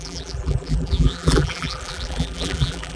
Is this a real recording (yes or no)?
no